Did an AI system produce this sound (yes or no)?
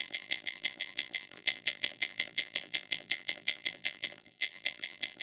yes